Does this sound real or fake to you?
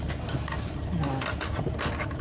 real